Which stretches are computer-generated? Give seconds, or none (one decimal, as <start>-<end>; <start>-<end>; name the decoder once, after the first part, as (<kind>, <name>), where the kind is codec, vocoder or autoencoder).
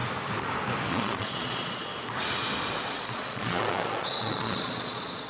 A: 0.9-1.9 (vocoder, Vocos); 3.1-5.3